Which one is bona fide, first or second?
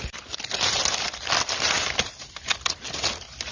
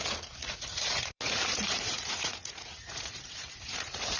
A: first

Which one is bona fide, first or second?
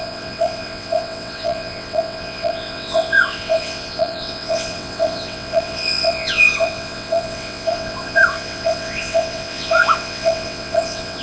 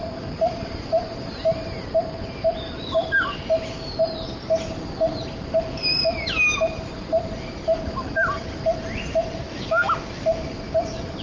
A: second